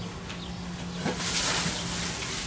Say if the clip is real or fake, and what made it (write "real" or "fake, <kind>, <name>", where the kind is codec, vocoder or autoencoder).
real